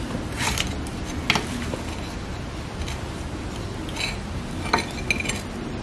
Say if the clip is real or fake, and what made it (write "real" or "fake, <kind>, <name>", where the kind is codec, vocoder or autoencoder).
real